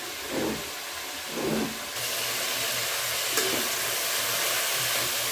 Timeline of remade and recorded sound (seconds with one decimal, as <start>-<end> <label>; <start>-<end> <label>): 0.0-5.3 recorded